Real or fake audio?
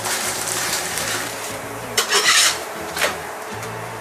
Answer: fake